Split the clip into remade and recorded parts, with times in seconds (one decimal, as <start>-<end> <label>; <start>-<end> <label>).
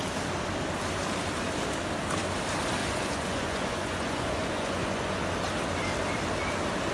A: 0.0-2.8 recorded; 2.8-5.2 remade; 5.2-6.9 recorded